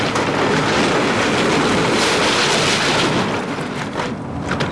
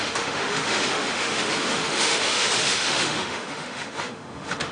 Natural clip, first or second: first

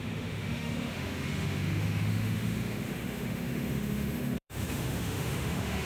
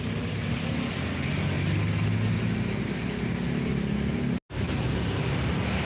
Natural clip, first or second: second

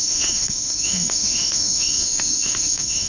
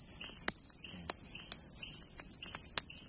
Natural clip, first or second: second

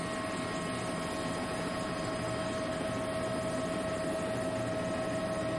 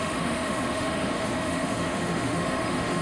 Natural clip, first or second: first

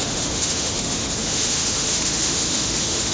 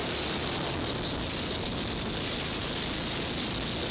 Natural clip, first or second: second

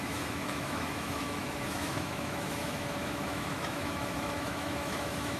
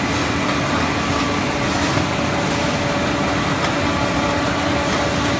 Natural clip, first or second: second